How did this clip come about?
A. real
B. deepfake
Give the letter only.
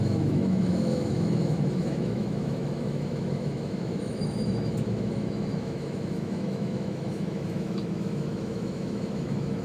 B